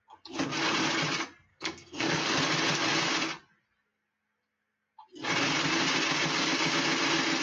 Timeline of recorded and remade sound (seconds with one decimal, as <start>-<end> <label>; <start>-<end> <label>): 0.0-1.5 recorded; 1.5-2.4 remade; 2.4-7.4 recorded